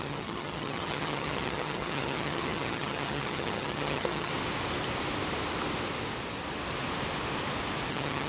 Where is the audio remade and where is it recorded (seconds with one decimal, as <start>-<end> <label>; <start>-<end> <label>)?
0.0-4.3 remade; 4.3-7.9 recorded; 7.9-8.3 remade